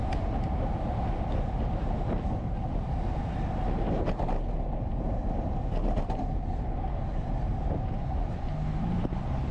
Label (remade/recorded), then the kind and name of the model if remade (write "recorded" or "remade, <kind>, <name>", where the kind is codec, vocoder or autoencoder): recorded